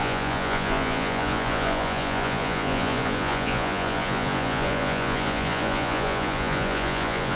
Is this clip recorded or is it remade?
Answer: remade